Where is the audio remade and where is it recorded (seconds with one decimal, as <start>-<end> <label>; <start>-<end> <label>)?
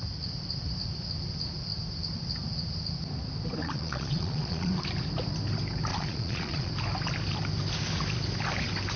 0.0-3.6 recorded; 3.6-4.7 remade; 4.7-5.9 recorded; 5.9-6.7 remade; 6.7-9.0 recorded